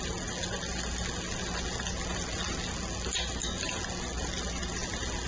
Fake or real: real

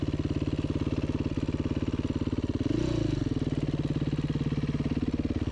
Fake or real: real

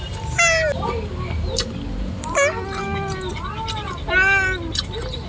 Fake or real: real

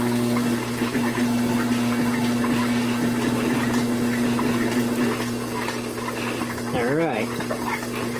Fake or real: real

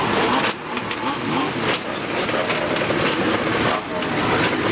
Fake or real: real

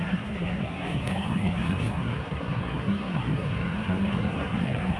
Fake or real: fake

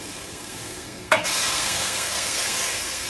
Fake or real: fake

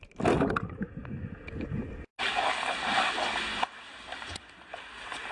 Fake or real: real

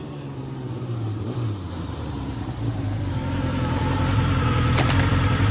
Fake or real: fake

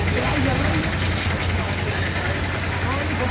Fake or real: real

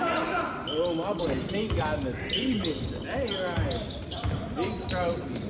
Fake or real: real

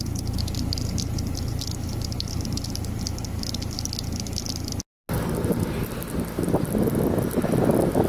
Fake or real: real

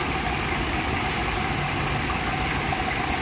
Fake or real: real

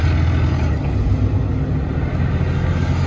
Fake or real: real